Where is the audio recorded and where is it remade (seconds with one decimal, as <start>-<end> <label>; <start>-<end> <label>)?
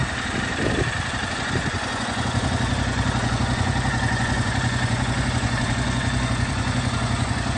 0.0-1.3 recorded; 1.3-7.6 remade